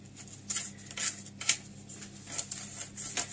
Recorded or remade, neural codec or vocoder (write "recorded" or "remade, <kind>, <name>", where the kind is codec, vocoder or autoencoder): recorded